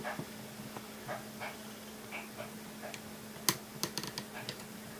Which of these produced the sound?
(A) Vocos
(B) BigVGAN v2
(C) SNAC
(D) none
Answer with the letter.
D